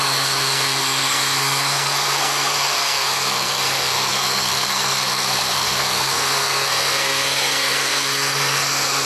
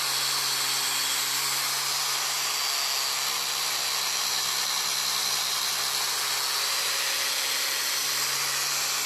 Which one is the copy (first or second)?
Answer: first